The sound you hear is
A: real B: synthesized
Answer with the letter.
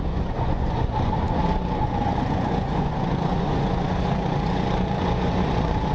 B